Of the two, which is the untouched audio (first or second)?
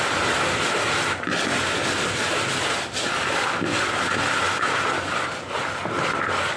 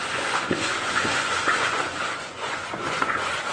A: first